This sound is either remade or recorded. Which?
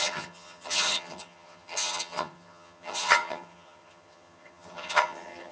remade